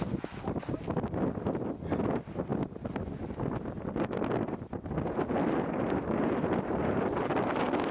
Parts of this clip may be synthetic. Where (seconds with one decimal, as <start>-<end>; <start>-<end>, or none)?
none